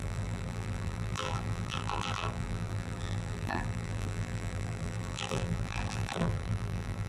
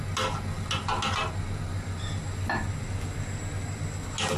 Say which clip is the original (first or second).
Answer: second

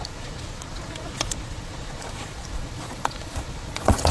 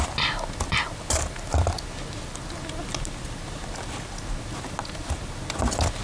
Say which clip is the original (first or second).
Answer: second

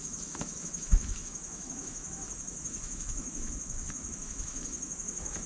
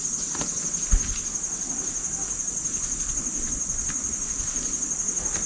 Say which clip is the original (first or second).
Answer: second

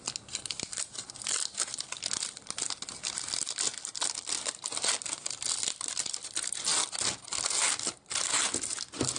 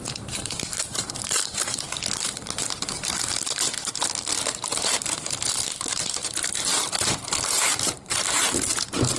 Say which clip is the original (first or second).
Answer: first